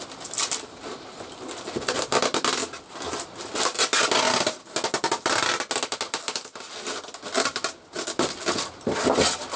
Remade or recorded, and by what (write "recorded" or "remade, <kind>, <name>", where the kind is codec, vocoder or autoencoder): recorded